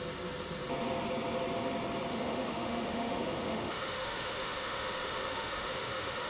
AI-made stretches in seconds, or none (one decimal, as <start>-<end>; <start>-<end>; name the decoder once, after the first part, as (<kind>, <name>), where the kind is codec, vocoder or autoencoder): 2.1-6.3 (autoencoder, DAC-VAE)